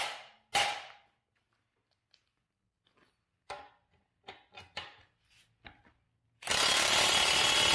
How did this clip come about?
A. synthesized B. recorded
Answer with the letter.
B